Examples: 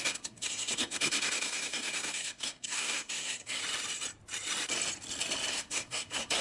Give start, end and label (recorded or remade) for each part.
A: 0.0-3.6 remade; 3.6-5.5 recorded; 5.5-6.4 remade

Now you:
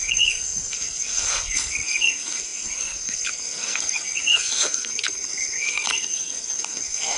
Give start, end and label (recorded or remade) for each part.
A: 0.0-7.2 remade

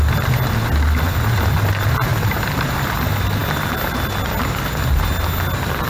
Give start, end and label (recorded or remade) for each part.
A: 0.0-5.9 recorded

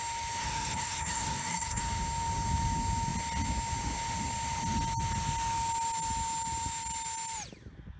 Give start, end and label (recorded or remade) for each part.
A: 0.0-0.4 recorded; 0.4-1.8 remade; 1.8-8.0 recorded

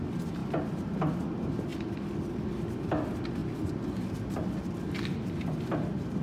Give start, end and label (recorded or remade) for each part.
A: 0.0-6.2 recorded

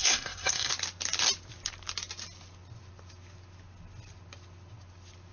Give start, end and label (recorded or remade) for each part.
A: 0.0-0.7 remade; 0.7-5.3 recorded

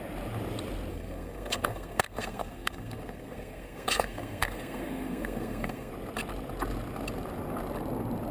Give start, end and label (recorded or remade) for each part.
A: 0.0-0.9 recorded; 0.9-5.9 remade; 5.9-8.3 recorded

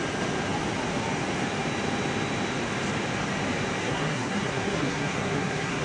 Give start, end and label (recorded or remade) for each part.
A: 0.0-3.8 recorded; 3.8-5.8 remade